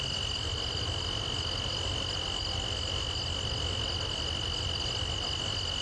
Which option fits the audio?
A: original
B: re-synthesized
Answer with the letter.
A